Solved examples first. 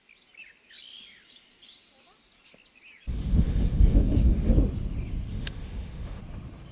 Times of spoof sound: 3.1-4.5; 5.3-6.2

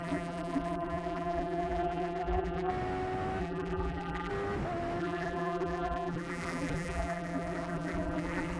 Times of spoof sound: 0.0-2.7; 3.4-4.3; 5.0-8.6

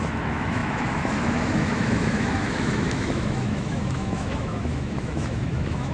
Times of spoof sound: 0.0-5.9